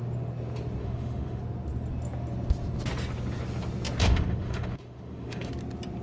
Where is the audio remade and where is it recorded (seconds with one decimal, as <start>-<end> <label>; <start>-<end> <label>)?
0.0-0.8 recorded; 0.8-1.4 remade; 1.4-4.0 recorded; 4.0-5.5 remade; 5.5-6.0 recorded